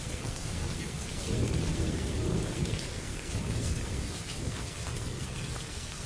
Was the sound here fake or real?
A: fake